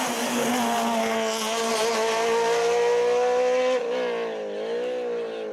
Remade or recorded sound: recorded